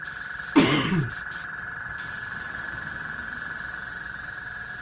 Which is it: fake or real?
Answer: real